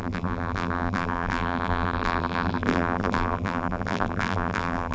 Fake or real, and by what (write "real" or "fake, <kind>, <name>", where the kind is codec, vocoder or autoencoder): fake, vocoder, BigVGAN v2